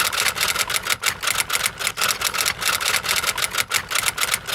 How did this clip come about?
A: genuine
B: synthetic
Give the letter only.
A